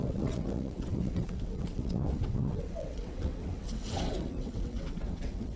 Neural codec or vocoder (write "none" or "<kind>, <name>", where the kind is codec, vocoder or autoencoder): vocoder, WaveNeXt